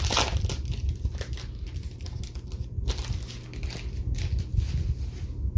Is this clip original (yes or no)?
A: yes